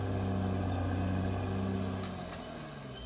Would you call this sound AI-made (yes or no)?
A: no